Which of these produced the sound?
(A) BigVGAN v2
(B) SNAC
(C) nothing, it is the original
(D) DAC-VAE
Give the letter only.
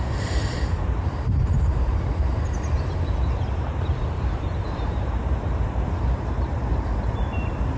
A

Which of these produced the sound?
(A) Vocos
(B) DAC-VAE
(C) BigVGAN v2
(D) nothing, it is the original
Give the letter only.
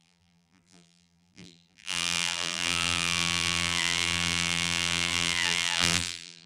C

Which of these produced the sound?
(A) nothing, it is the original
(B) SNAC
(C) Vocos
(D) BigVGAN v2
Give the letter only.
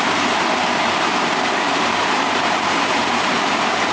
D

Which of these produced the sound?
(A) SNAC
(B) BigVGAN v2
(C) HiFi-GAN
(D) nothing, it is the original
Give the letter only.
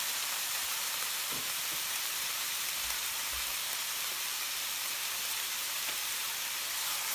B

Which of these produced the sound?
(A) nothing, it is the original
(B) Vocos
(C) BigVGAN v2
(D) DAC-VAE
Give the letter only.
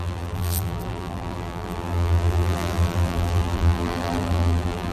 C